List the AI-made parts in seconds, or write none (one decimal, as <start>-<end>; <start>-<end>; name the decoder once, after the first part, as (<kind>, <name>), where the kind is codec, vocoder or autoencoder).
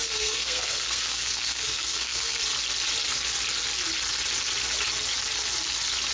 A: 0.0-2.4 (codec, SNAC)